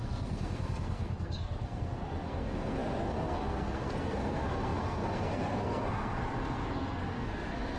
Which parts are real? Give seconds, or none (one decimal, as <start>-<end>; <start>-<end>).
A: none